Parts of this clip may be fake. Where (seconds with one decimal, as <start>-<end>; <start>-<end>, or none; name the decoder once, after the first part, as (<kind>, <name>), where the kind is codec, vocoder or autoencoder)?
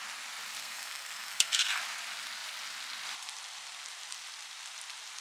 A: 0.6-1.8 (codec, SNAC)